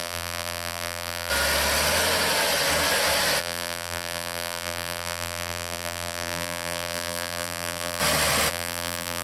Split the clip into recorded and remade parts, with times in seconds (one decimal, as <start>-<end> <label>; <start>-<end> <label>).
0.0-1.3 remade; 1.3-3.4 recorded; 3.4-8.0 remade; 8.0-8.5 recorded; 8.5-9.2 remade